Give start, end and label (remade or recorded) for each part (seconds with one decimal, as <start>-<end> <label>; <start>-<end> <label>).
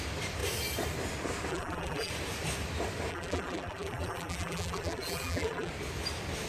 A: 0.0-1.5 recorded; 1.5-2.1 remade; 2.1-3.1 recorded; 3.1-5.7 remade; 5.7-6.5 recorded